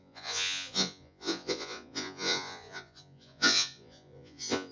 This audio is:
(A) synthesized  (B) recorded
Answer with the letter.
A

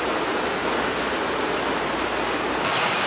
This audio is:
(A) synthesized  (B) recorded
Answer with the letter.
B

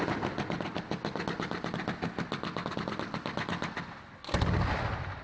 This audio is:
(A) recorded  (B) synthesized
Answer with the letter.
A